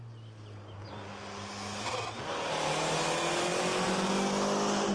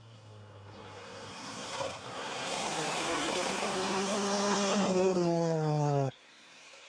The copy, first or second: second